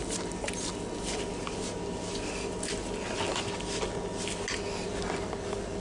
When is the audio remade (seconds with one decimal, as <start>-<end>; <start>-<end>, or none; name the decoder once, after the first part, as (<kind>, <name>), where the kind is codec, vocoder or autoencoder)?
none